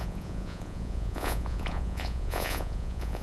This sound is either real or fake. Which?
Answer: fake